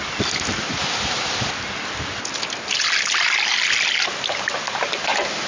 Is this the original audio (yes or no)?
yes